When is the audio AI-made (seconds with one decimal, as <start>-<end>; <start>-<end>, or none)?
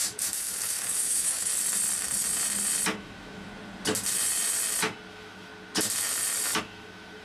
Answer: 0.0-1.5; 3.0-3.5; 5.1-5.5; 6.6-7.2